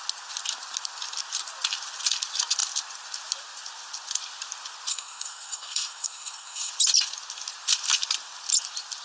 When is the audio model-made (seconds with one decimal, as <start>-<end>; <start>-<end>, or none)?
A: 4.9-6.7